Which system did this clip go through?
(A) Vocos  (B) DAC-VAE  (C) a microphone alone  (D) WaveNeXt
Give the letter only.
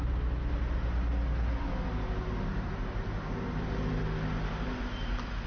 C